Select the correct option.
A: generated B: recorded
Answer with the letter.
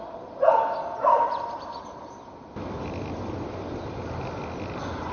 B